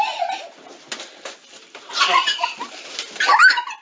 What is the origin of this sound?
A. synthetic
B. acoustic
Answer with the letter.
B